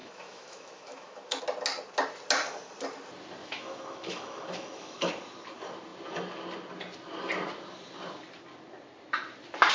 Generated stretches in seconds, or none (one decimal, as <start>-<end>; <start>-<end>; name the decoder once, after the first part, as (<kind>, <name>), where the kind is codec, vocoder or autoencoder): 0.0-1.4 (autoencoder, DAC-VAE); 3.4-5.1